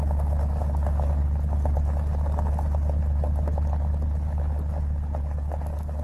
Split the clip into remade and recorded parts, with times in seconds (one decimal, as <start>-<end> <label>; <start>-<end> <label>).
0.0-6.0 recorded